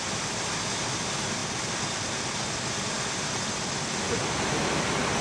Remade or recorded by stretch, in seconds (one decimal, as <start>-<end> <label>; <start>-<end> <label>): 0.0-5.2 recorded